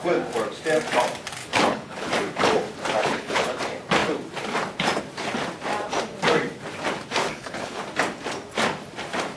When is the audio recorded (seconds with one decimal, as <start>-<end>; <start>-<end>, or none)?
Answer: 0.0-1.4; 2.1-3.0; 3.6-7.2; 7.8-9.4